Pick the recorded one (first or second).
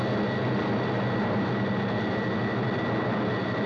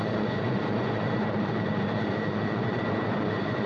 first